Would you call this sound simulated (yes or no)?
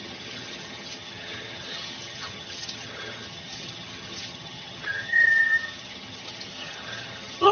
yes